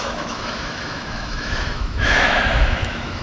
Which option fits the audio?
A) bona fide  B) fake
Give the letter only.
B